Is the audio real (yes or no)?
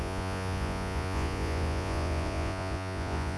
no